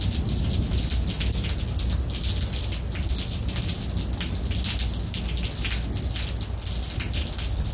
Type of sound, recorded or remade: recorded